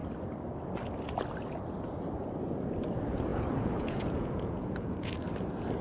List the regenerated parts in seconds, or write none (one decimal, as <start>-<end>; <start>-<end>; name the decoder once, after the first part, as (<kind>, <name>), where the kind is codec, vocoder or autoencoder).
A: 3.3-5.1 (vocoder, Vocos)